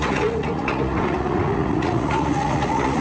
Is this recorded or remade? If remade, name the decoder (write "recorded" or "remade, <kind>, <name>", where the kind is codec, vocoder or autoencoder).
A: remade, vocoder, Vocos